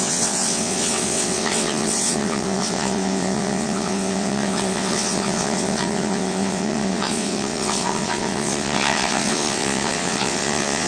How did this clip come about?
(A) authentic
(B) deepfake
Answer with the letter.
B